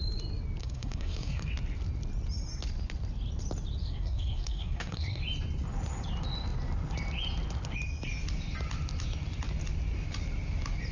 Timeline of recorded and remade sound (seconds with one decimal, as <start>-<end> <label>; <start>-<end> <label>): 0.0-0.6 recorded; 0.6-1.5 remade; 1.5-3.8 recorded; 3.8-5.2 remade; 5.2-10.9 recorded

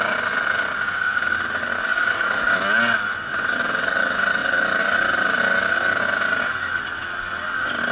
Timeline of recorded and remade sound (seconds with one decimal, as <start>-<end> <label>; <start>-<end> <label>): 0.0-1.9 recorded; 1.9-2.5 remade; 2.5-7.9 recorded

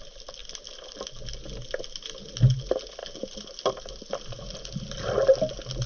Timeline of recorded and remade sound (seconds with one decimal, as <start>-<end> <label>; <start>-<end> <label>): 0.0-5.9 recorded

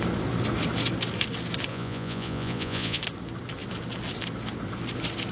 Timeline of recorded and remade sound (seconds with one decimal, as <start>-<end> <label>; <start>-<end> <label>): 0.0-1.7 recorded; 1.7-3.0 remade; 3.0-5.3 recorded